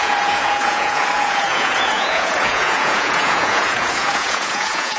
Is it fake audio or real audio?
fake